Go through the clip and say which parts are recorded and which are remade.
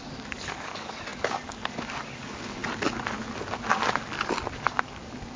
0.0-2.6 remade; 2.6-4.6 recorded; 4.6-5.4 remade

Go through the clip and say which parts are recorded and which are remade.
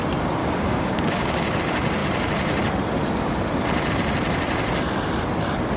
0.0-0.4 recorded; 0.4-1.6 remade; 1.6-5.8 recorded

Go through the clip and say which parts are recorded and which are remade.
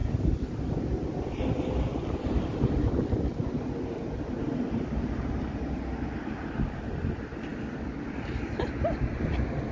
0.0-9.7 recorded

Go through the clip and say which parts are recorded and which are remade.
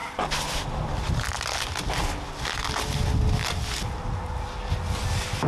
0.0-5.5 recorded